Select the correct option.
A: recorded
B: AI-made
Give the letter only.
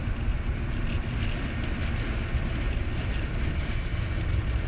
A